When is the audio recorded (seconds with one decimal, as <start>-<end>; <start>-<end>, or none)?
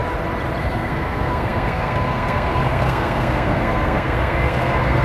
0.0-0.6